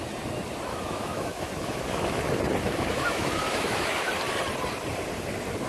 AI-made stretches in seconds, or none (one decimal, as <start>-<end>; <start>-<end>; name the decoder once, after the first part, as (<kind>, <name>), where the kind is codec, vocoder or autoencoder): 0.7-2.2 (autoencoder, DAC-VAE); 2.6-4.1